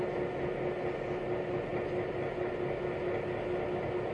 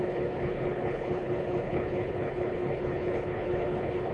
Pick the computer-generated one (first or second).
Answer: second